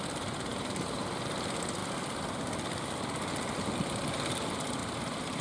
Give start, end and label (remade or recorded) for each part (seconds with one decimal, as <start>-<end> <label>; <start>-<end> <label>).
0.0-0.5 recorded; 0.5-1.1 remade; 1.1-4.8 recorded; 4.8-5.4 remade